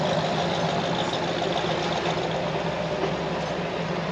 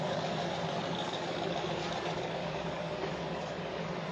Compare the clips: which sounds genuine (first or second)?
first